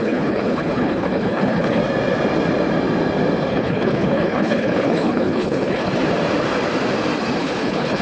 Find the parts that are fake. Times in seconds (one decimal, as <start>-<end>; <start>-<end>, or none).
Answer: 0.0-1.8; 3.5-5.9; 7.4-8.0